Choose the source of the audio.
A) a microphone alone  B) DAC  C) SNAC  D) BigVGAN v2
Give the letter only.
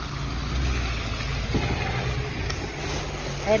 A